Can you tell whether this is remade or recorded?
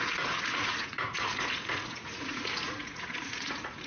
remade